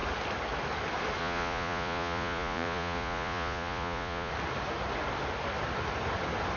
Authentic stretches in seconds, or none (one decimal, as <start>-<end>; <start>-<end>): 0.0-1.2; 4.3-6.6